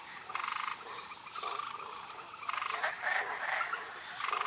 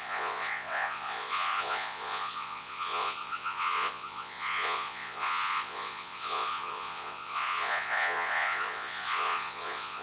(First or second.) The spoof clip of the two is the second